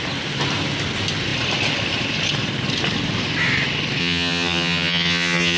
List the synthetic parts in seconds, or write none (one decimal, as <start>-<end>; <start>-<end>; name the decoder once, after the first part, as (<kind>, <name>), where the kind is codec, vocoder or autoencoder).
4.0-5.6 (vocoder, HiFi-GAN)